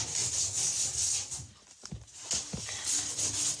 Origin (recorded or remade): recorded